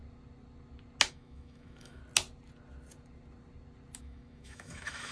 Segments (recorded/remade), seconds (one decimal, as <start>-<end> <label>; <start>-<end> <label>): 0.0-1.1 recorded; 1.1-2.0 remade; 2.0-4.0 recorded; 4.0-5.1 remade